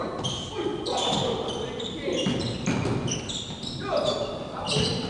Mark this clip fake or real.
real